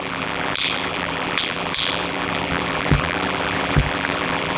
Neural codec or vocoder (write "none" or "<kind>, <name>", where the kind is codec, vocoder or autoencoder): vocoder, BigVGAN v2